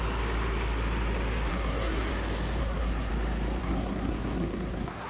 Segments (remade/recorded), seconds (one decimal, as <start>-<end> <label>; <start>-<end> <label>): 0.0-1.5 recorded; 1.5-2.1 remade; 2.1-2.6 recorded; 2.6-3.1 remade; 3.1-3.6 recorded; 3.6-5.1 remade